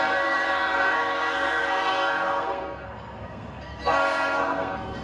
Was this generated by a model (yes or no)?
yes